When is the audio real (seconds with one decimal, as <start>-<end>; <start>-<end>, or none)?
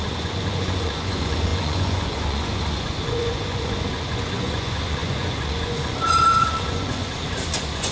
none